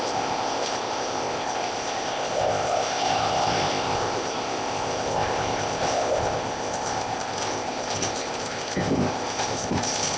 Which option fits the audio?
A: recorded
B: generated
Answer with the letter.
B